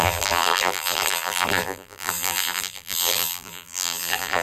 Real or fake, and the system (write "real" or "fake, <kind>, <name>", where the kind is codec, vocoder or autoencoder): fake, vocoder, BigVGAN v2